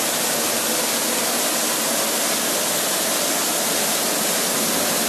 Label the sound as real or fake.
real